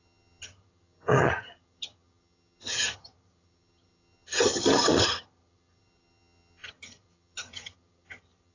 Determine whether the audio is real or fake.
fake